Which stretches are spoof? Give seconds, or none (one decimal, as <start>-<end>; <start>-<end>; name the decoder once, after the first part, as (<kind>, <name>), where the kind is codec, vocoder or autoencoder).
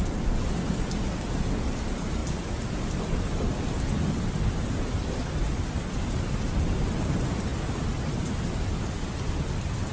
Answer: 2.2-6.1 (vocoder, BigVGAN v2)